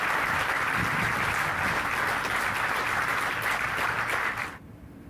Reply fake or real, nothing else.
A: fake